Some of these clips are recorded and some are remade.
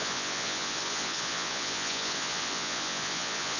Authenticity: remade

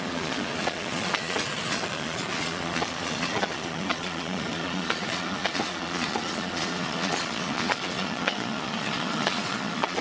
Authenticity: remade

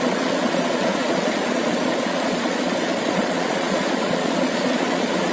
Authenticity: remade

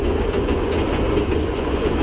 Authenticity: remade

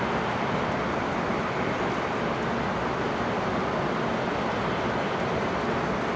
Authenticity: recorded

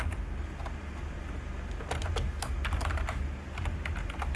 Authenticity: recorded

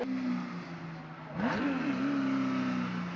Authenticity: recorded